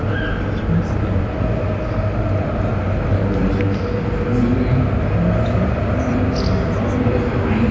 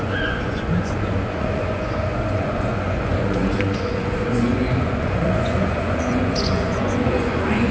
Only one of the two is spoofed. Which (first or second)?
second